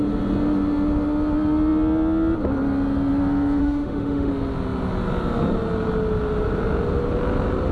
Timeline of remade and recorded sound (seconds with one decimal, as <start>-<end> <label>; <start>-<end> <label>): 0.0-3.6 recorded; 3.6-4.3 remade; 4.3-7.7 recorded